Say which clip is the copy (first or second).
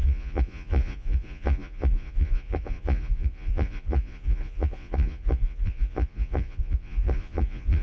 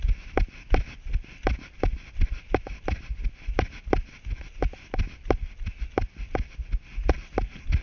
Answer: first